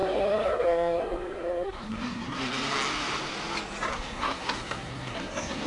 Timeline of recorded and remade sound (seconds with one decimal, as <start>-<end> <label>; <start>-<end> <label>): 0.0-2.4 remade; 2.4-3.9 recorded; 3.9-5.7 remade